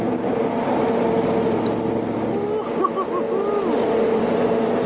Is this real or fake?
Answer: real